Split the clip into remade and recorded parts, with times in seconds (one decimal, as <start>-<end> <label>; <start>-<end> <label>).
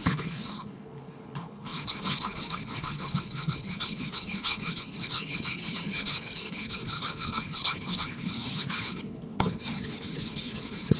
0.0-11.0 remade